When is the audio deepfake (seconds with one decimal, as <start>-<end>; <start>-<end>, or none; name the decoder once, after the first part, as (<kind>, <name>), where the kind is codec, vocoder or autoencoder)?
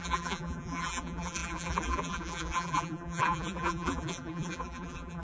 0.0-5.2 (vocoder, BigVGAN v2)